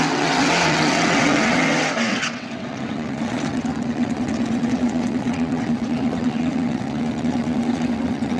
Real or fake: fake